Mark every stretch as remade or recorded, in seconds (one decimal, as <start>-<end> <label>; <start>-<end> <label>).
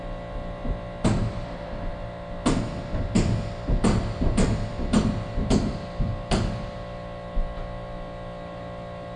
0.0-9.2 recorded